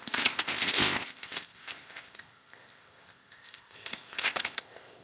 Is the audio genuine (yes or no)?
no